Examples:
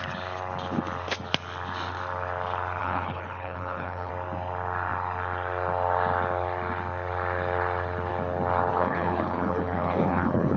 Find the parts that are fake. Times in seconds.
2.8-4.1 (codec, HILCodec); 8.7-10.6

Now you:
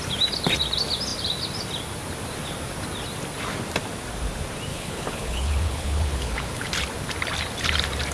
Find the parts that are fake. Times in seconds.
4.7-6.7 (codec, HILCodec)

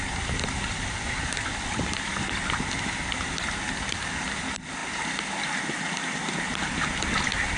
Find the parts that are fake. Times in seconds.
none

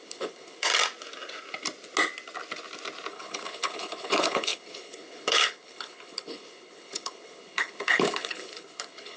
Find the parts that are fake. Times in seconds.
0.0-0.7 (codec, HILCodec); 3.1-9.2

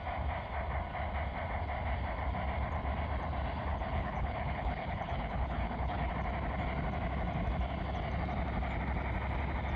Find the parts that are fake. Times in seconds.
3.7-6.1 (codec, HILCodec)

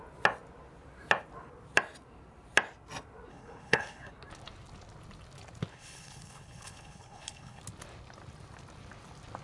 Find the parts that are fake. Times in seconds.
3.3-4.1 (codec, HILCodec); 5.7-7.6

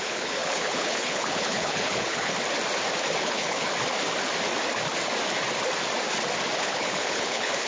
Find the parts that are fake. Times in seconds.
0.0-2.3 (codec, HILCodec); 3.2-3.7; 6.6-7.7

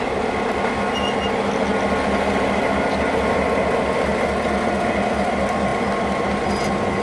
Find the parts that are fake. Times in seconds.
none